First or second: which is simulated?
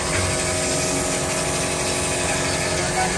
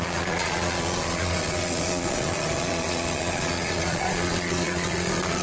second